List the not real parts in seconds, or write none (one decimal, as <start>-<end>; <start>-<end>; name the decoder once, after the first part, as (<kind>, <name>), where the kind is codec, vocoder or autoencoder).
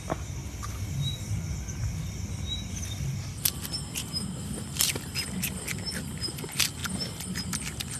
none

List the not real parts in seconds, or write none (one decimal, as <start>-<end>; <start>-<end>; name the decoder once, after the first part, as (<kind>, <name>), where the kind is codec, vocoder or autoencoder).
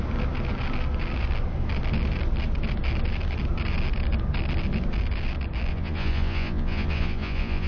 5.7-7.7 (vocoder, Vocos)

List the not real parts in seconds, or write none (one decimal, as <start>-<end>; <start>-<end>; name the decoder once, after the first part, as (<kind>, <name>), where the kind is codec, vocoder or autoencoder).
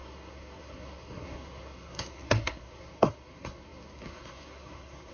0.0-5.1 (codec, SNAC)